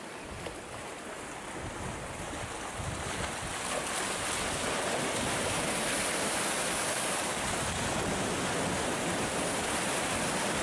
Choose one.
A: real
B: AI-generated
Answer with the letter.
A